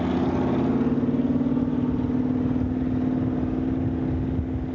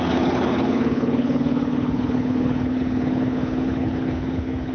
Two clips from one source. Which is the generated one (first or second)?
second